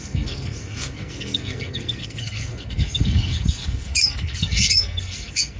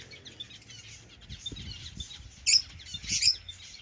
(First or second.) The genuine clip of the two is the second